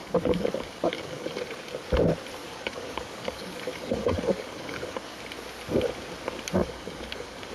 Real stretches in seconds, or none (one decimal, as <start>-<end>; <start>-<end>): 1.4-2.4; 5.2-6.6